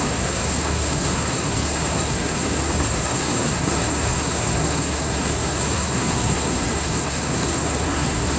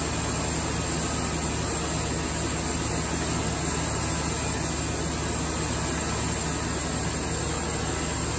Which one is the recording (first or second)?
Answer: second